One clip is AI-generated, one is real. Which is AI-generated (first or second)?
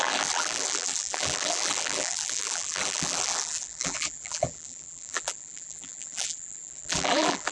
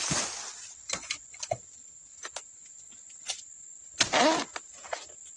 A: first